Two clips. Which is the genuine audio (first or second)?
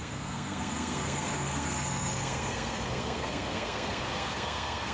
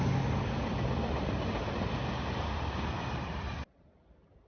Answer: second